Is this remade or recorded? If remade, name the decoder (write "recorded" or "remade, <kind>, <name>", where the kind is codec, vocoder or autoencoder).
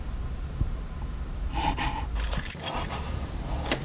recorded